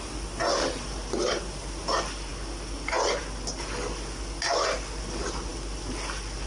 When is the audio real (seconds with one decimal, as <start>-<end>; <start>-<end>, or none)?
0.0-6.5